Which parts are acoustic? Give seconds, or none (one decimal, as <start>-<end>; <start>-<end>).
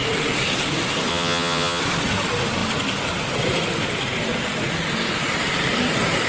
0.0-1.1; 1.8-6.3